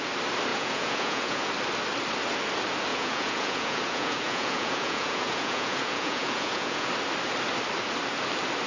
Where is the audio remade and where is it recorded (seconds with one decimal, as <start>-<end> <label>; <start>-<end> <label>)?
0.0-0.5 recorded; 0.5-1.5 remade; 1.5-2.9 recorded; 2.9-6.9 remade; 6.9-8.7 recorded